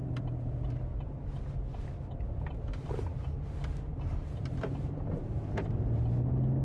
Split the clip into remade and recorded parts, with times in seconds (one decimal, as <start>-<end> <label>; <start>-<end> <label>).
0.0-0.7 remade; 0.7-3.9 recorded; 3.9-5.4 remade; 5.4-6.6 recorded